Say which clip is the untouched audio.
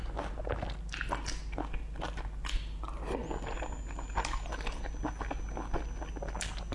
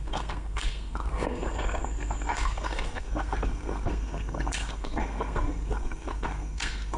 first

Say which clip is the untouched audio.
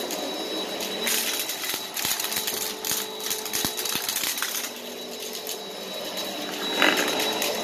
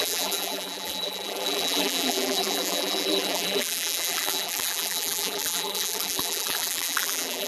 first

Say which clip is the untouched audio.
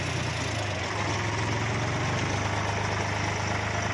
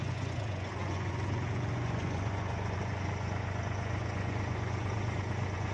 first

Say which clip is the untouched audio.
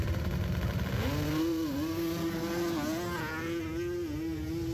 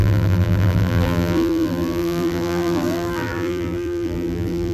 first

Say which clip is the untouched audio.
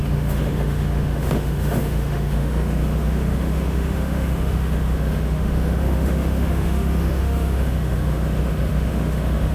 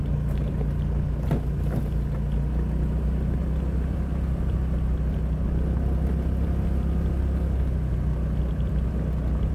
second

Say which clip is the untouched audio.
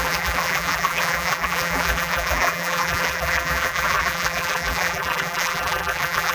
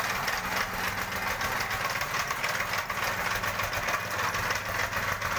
second